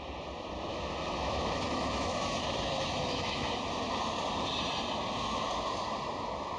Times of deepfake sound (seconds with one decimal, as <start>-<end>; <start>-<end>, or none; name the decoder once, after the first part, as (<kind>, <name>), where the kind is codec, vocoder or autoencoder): 0.7-3.6 (autoencoder, DAC-VAE)